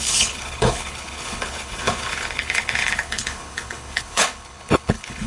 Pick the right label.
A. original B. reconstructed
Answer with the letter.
B